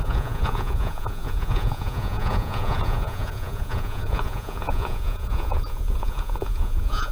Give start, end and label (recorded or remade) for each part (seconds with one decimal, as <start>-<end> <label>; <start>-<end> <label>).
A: 0.0-7.1 remade